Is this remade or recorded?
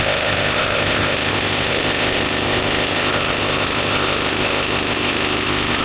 remade